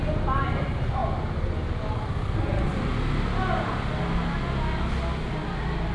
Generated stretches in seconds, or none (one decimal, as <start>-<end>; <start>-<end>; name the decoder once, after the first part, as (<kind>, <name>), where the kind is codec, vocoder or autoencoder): none

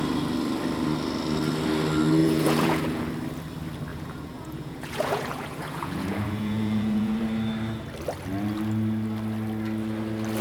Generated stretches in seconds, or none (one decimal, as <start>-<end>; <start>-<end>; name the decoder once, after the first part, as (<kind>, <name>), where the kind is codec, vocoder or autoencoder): 2.2-3.0 (vocoder, Vocos); 3.9-7.2

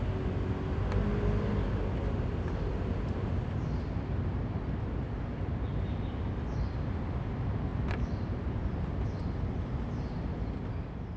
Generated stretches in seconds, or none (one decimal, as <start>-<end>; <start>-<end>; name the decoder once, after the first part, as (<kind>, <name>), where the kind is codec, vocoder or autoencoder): none

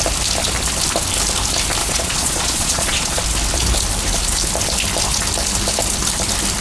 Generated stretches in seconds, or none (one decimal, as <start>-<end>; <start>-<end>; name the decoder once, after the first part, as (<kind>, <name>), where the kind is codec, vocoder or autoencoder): 1.8-3.2 (vocoder, Vocos)

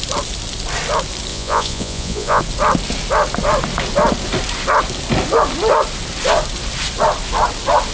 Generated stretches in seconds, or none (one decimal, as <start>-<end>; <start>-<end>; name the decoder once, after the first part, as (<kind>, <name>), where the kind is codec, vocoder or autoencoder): 1.3-2.4 (vocoder, Vocos)

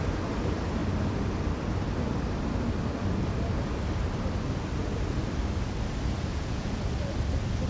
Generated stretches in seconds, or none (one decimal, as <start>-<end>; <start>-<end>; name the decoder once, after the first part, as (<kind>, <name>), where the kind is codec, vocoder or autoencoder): 6.3-6.8 (vocoder, Vocos)

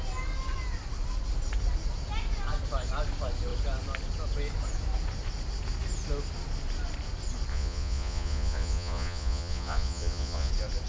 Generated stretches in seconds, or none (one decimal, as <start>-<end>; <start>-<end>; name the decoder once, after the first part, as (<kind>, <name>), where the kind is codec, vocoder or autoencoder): 7.5-10.5 (vocoder, Vocos)